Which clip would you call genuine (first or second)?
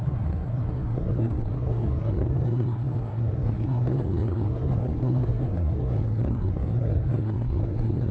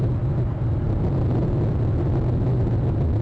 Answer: second